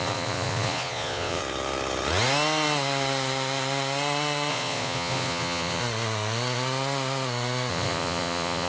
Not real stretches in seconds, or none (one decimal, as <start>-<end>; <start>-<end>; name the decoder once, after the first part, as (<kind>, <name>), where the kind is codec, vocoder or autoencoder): 0.0-1.4 (vocoder, Vocos); 4.5-5.8; 7.7-8.7